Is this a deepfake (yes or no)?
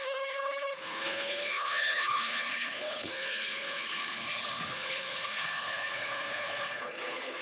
yes